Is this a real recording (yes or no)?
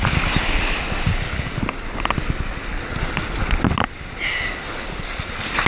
yes